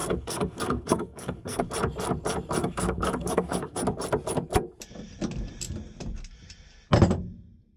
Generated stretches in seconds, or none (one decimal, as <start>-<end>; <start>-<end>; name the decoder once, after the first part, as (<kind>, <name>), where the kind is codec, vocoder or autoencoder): 0.0-1.7 (codec, SNAC); 2.6-3.8